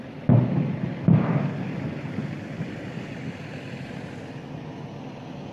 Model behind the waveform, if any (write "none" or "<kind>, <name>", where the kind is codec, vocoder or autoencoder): none